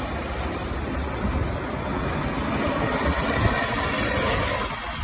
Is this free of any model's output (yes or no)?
yes